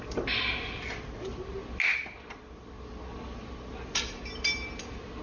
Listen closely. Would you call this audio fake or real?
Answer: real